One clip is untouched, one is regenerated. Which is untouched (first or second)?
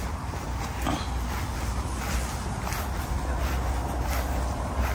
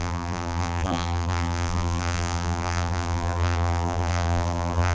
first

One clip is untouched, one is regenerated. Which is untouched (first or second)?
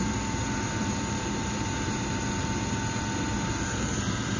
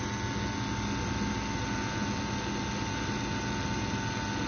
second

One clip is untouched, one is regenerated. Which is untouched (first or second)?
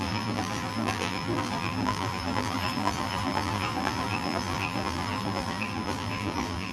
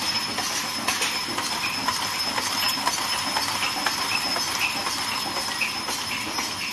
second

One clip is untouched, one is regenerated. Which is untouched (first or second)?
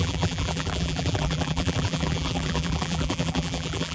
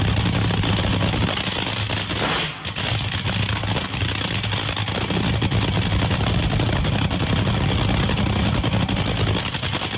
second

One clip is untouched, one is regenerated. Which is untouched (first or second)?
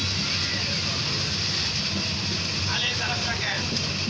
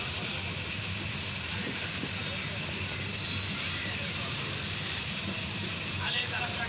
first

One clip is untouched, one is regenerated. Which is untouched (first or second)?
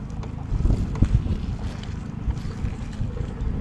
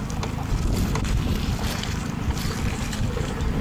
first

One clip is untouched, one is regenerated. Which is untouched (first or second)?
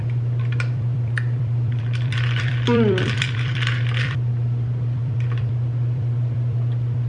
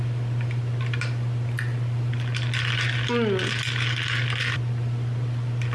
second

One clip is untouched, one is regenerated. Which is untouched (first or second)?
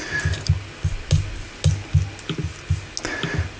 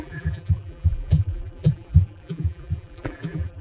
first